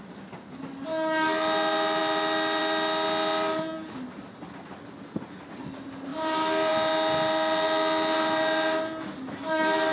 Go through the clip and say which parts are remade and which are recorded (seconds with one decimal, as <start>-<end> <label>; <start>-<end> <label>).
0.0-9.9 recorded